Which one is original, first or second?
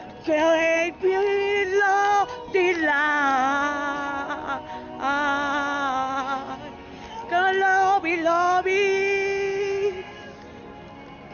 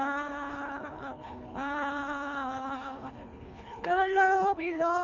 first